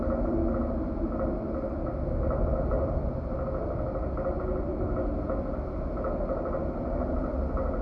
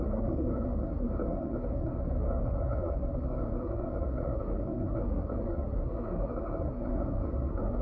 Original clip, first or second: first